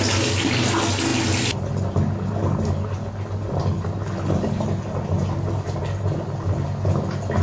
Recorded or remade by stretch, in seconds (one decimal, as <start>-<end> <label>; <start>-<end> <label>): 0.0-7.4 recorded